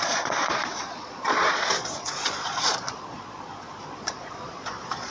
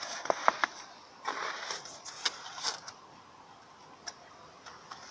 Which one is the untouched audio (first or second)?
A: second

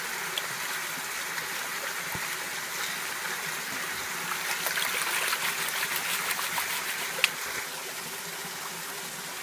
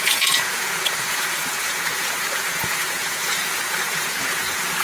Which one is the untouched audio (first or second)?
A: first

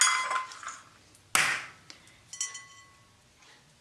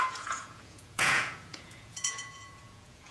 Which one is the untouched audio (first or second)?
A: first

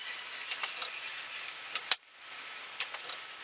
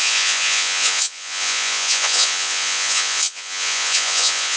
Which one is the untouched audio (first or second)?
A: first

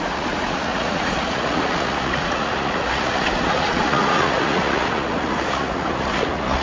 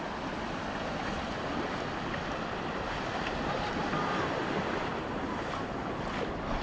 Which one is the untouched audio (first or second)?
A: second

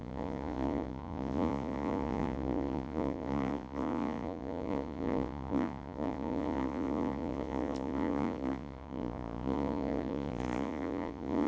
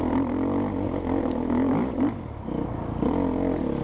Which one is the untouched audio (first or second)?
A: second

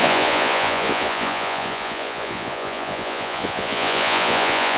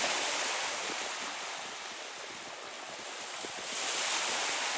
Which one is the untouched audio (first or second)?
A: second